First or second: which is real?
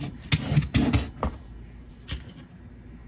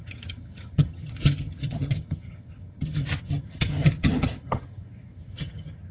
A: first